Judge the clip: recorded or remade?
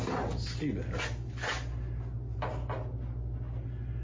recorded